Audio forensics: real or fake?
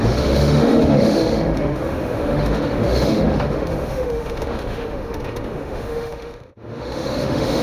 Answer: fake